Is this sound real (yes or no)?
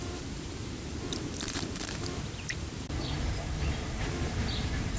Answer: no